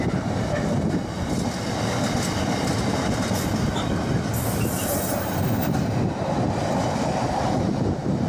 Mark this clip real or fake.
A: real